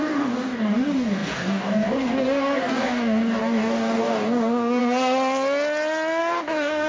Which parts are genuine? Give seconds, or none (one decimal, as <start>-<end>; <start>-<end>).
4.8-6.2

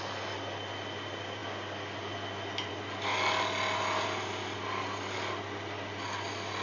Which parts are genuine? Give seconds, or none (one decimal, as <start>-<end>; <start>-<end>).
0.0-6.6

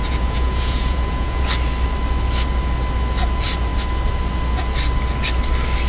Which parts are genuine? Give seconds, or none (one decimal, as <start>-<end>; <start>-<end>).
1.5-5.9

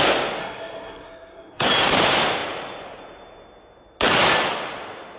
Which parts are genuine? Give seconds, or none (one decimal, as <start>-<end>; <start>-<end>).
0.0-0.4; 1.7-5.2

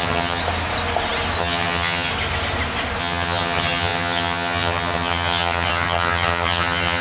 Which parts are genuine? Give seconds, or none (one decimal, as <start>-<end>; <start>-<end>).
0.4-1.4; 2.1-3.0